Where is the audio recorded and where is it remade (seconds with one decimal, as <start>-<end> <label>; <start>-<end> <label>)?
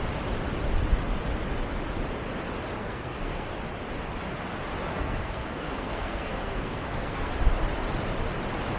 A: 0.0-2.8 recorded; 2.8-3.5 remade; 3.5-4.9 recorded; 4.9-7.3 remade; 7.3-8.8 recorded